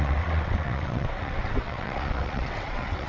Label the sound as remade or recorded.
remade